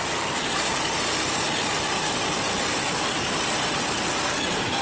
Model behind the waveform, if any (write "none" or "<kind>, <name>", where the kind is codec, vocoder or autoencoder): none